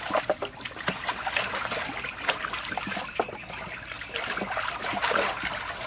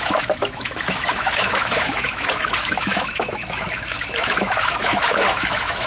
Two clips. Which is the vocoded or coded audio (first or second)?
second